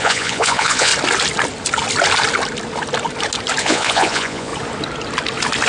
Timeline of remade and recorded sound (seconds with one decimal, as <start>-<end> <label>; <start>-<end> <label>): 0.0-0.9 remade; 0.9-3.6 recorded; 3.6-4.5 remade; 4.5-5.7 recorded

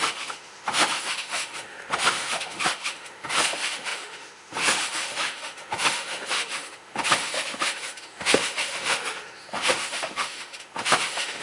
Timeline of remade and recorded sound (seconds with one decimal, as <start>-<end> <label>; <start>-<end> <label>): 0.0-11.4 remade

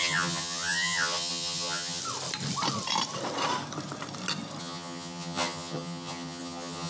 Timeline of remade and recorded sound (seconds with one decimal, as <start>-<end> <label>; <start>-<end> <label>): 0.0-2.0 remade; 2.0-4.6 recorded; 4.6-6.9 remade

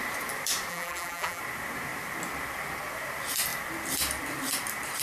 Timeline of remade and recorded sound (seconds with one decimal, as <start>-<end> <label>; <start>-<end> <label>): 0.0-0.7 recorded; 0.7-1.4 remade; 1.4-5.0 recorded

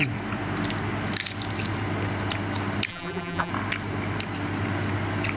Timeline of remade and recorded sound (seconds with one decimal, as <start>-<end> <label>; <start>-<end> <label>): 0.0-2.9 recorded; 2.9-3.5 remade; 3.5-5.4 recorded

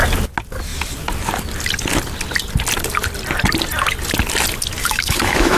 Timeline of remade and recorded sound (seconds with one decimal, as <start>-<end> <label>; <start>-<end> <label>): 0.0-4.8 recorded; 4.8-5.6 remade

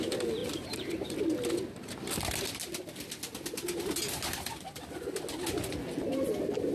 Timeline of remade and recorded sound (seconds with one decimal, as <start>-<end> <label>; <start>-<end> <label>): 0.0-0.4 recorded; 0.4-1.1 remade; 1.1-6.7 recorded

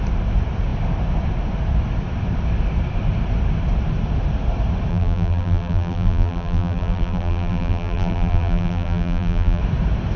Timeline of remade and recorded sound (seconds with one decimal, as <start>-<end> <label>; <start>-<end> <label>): 0.0-4.9 recorded; 4.9-9.6 remade; 9.6-10.2 recorded